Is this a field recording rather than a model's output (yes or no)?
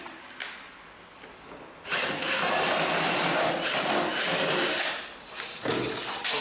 yes